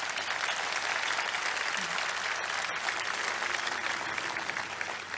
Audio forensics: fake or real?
real